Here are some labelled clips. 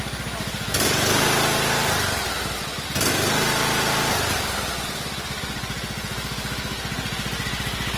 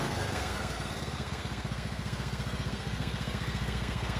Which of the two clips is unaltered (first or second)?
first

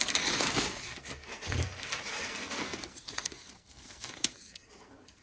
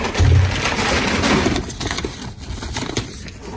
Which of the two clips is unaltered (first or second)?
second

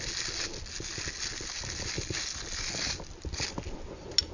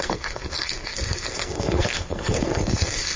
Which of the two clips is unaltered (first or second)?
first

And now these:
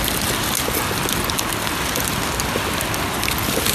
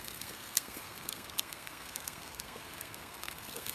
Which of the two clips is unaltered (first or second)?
first